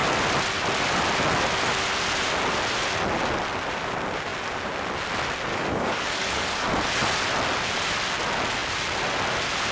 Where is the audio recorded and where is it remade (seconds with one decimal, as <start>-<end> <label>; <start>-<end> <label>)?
0.0-5.5 recorded; 5.5-6.8 remade; 6.8-9.7 recorded